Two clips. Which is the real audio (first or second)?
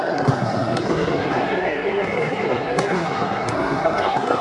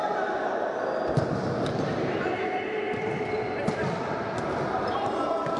second